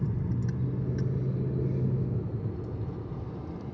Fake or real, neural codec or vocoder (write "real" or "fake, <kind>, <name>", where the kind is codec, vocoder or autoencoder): real